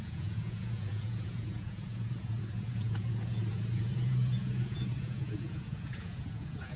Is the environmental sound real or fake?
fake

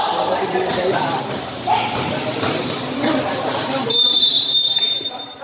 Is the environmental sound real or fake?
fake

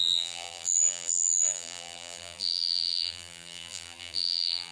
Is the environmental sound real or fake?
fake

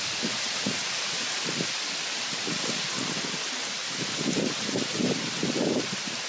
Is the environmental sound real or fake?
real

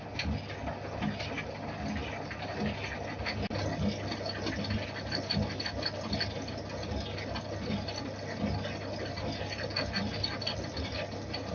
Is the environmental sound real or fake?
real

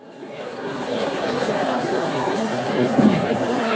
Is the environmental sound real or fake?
fake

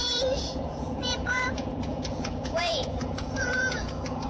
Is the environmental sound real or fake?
fake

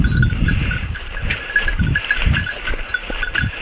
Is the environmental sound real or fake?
real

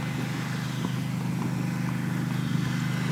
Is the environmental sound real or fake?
real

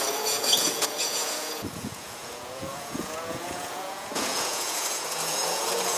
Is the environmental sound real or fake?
fake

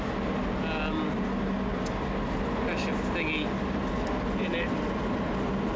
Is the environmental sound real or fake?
real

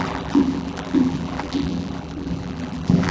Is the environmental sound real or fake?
fake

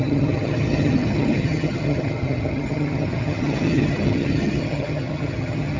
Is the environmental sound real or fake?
fake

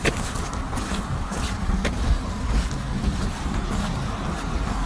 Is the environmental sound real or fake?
real